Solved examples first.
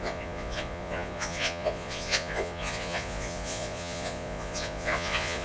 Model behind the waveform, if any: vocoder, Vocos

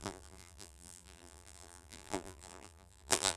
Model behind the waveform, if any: vocoder, BigVGAN v2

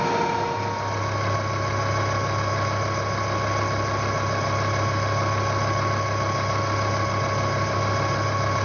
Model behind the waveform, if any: none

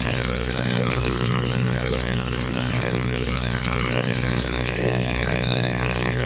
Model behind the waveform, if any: codec, SNAC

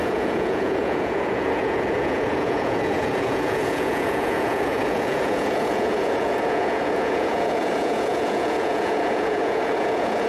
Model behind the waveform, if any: vocoder, Vocos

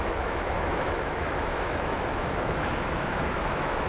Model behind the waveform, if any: autoencoder, DAC-VAE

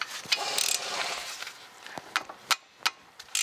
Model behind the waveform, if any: none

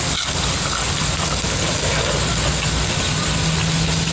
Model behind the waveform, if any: none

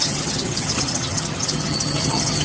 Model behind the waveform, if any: vocoder, HiFi-GAN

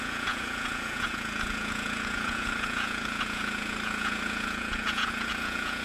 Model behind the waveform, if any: vocoder, Vocos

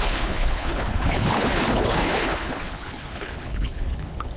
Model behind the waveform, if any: codec, HILCodec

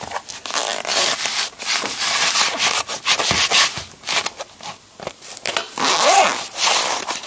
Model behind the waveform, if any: none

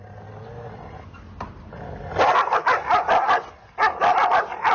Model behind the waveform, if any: none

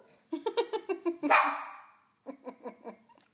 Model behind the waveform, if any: none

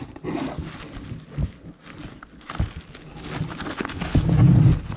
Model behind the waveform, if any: none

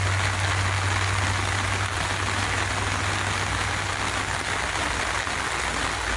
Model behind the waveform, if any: none